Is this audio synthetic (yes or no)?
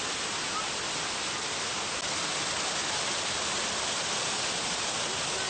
no